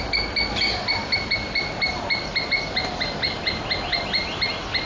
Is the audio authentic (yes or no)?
no